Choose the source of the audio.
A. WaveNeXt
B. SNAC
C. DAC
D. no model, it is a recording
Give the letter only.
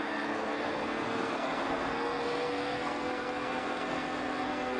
B